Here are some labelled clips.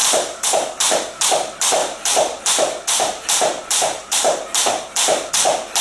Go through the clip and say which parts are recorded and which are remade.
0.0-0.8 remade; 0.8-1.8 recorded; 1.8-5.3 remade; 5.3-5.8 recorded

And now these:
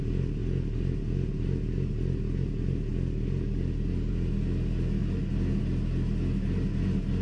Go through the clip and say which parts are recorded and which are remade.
0.0-7.2 recorded

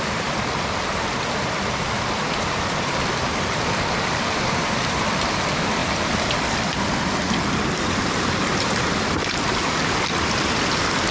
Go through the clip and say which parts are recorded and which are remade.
0.0-11.1 recorded